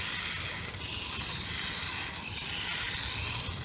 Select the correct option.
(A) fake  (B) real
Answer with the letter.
B